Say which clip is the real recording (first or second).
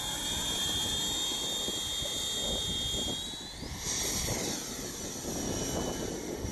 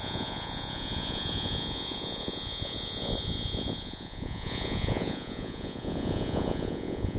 first